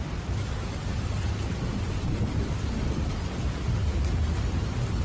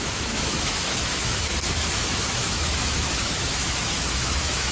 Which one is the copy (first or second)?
second